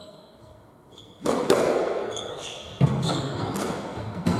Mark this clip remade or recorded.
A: remade